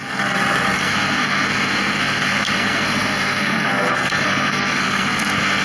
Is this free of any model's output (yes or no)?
no